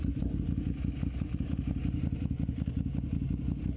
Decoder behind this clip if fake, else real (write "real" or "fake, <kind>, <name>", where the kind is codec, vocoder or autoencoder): real